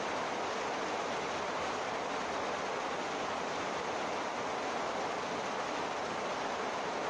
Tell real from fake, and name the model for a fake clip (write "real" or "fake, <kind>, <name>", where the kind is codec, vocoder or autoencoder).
real